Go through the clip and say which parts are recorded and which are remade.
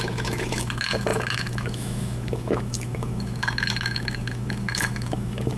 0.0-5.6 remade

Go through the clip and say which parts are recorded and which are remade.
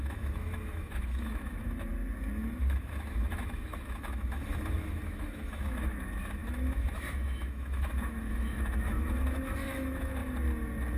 0.0-1.9 remade; 1.9-2.6 recorded; 2.6-10.2 remade; 10.2-11.0 recorded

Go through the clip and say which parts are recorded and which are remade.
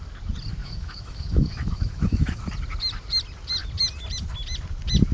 0.0-0.6 recorded; 0.6-2.4 remade; 2.4-5.1 recorded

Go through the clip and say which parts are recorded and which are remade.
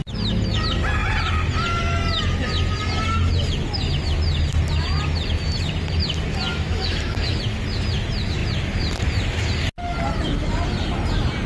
0.0-6.5 recorded; 6.5-7.4 remade; 7.4-11.5 recorded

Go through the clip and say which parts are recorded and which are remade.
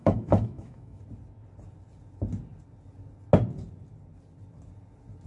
0.0-1.0 remade; 1.0-5.3 recorded